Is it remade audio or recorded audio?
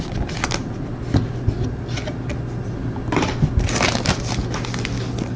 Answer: recorded